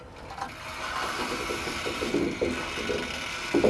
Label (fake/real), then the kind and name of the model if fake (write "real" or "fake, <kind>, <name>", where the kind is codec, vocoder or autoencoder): real